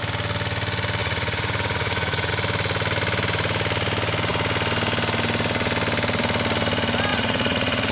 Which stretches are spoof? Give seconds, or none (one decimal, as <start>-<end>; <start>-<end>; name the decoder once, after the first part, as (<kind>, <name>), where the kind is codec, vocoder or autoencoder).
1.0-2.3 (vocoder, Vocos); 7.1-7.9